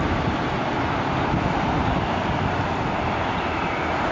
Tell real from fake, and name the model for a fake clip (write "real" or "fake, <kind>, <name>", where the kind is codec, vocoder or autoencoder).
fake, vocoder, BigVGAN v2